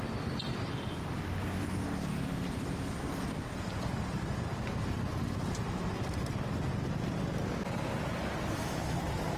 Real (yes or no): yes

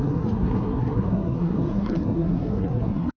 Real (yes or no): no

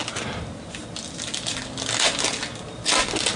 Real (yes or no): yes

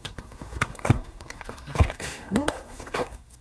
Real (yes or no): no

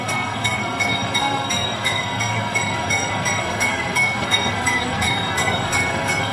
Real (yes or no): no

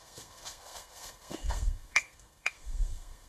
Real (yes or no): no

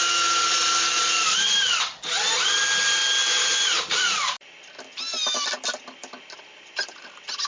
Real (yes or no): yes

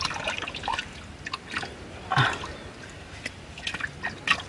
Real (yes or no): yes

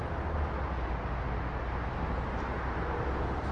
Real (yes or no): yes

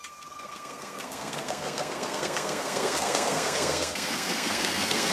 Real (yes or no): no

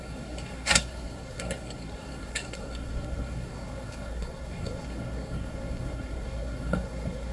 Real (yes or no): no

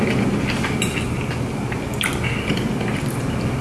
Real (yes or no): yes